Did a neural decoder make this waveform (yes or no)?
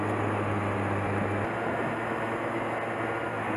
no